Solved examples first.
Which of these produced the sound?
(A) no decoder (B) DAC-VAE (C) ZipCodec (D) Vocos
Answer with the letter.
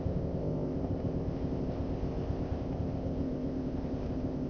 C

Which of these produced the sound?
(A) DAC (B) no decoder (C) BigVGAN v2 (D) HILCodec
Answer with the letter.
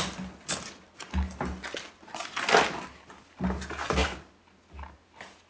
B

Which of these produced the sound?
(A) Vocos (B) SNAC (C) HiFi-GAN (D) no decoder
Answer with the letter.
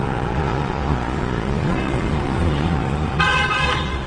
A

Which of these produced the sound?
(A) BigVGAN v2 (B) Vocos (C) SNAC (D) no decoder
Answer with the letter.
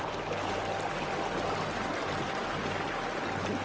D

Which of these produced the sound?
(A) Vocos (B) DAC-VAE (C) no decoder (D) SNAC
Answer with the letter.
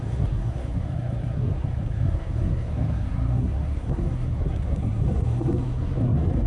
D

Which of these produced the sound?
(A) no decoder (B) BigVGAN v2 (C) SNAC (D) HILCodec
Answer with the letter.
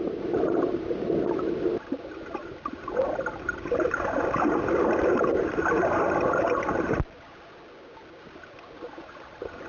A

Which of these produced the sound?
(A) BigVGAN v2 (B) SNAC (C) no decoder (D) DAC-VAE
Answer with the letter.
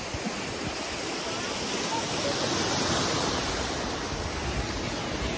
C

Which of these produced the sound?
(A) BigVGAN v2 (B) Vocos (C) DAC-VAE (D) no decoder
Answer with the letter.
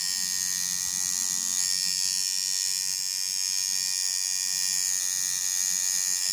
D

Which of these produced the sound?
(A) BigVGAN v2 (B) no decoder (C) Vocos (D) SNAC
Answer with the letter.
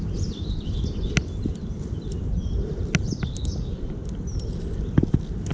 B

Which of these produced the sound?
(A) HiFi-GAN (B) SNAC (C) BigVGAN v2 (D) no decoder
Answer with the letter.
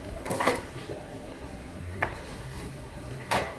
B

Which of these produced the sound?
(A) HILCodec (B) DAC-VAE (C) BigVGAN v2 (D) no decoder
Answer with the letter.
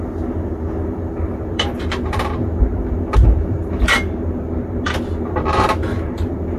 C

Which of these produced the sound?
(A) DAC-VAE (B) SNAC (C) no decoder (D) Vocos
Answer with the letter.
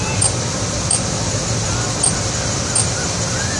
C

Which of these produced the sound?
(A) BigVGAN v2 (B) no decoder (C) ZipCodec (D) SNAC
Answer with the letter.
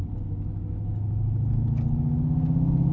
B